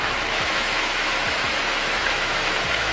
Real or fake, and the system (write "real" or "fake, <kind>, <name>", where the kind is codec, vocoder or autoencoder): fake, autoencoder, DAC-VAE